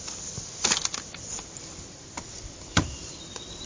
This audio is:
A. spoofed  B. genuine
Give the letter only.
B